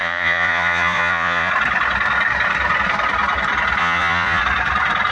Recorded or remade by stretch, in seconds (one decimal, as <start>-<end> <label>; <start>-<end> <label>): 0.0-1.5 remade; 1.5-3.8 recorded; 3.8-4.4 remade; 4.4-5.1 recorded